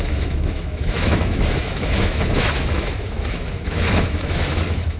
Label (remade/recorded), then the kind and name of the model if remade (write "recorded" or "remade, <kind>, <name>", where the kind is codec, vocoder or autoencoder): remade, autoencoder, DAC-VAE